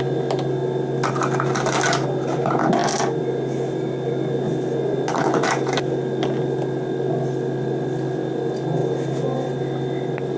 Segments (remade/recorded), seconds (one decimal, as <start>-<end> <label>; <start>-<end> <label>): 0.0-10.4 recorded